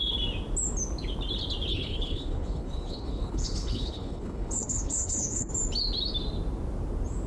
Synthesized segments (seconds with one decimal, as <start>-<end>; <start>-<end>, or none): 1.7-5.5